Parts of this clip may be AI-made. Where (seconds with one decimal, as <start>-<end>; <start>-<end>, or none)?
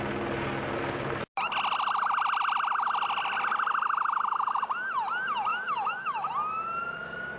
5.5-6.3